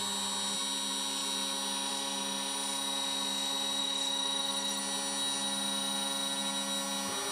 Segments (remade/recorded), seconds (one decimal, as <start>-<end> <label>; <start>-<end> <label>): 0.0-3.8 recorded; 3.8-4.8 remade; 4.8-7.3 recorded